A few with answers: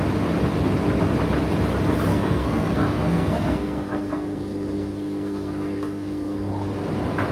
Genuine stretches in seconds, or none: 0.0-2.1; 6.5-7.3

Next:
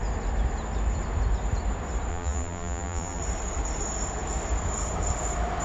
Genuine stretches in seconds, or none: 0.0-2.1; 3.2-5.6

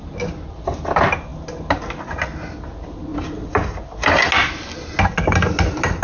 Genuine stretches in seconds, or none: 0.0-6.0

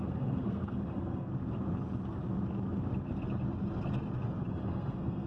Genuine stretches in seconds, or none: 1.3-4.5

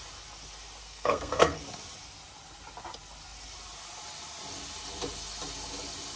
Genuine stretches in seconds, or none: 0.0-0.8; 1.6-6.2

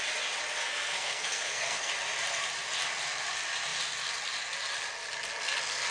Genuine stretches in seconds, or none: 0.0-0.6; 1.9-5.9

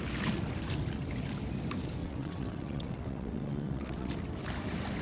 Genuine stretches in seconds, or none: 0.0-2.0; 4.1-5.0